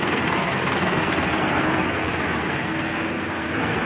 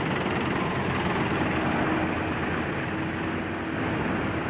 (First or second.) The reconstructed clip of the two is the first